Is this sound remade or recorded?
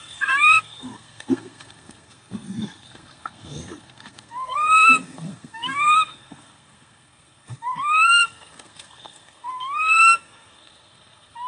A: remade